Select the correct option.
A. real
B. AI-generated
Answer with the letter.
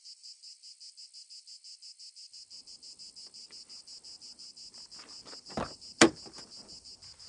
A